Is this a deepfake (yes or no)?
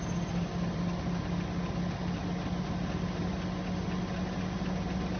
no